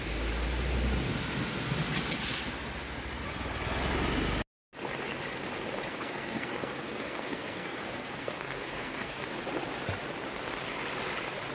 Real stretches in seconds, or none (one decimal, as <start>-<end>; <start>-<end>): 0.0-5.9; 9.3-11.5